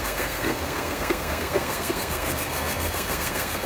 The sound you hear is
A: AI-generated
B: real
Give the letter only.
A